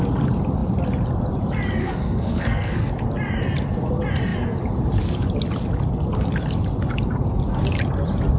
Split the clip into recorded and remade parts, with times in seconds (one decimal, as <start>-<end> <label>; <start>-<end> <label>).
0.0-1.8 recorded; 1.8-2.9 remade; 2.9-8.4 recorded